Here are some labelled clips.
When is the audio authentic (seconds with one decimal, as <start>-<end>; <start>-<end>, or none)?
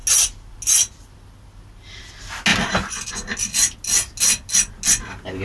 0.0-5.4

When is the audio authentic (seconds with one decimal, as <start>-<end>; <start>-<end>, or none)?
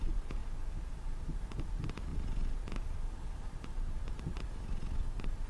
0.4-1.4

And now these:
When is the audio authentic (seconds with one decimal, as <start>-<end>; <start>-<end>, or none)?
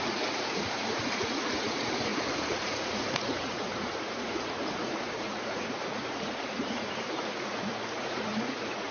none